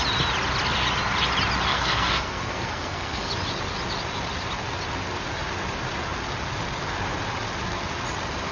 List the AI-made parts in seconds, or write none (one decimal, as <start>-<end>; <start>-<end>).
1.7-3.3